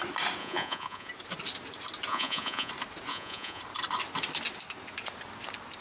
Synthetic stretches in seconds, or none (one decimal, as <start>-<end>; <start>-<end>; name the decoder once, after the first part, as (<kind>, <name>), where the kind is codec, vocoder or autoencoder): 0.4-1.1 (vocoder, Vocos); 2.1-2.7; 3.1-3.6

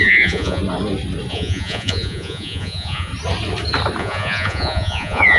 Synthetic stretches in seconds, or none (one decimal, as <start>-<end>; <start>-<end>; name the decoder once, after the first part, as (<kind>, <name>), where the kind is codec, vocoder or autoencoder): 0.0-0.6 (vocoder, Vocos); 1.3-3.1; 4.0-5.4

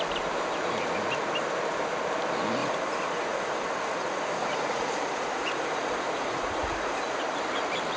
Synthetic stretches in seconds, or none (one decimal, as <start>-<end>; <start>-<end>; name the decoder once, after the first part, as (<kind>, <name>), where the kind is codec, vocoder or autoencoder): 2.6-7.2 (vocoder, Vocos)

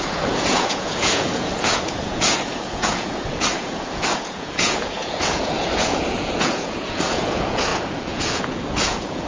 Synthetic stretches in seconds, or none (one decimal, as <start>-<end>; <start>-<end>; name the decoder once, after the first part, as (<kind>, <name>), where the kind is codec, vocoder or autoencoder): 0.0-9.3 (vocoder, Vocos)

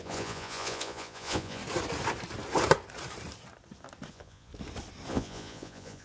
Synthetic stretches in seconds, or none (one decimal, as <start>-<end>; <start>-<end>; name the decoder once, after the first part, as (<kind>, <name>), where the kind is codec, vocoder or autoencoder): 0.0-1.6 (vocoder, Vocos); 4.1-4.5; 5.1-6.0

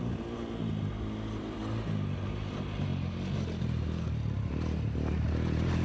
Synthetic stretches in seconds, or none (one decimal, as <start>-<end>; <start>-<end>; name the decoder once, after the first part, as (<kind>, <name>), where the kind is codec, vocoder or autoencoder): none

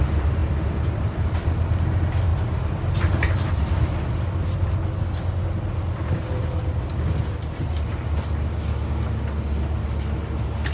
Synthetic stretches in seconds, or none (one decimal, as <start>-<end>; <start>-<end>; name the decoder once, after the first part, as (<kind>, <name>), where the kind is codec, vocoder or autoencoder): none